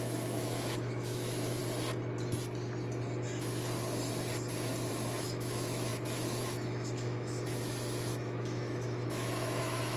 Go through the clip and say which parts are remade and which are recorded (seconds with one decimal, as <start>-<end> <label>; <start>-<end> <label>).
0.0-1.6 remade; 1.6-4.9 recorded; 4.9-10.0 remade